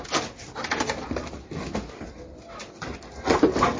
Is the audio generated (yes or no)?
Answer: no